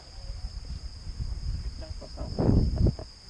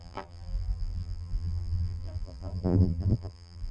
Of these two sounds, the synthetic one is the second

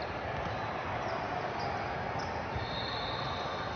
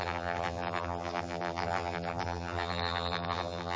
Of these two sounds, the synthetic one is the second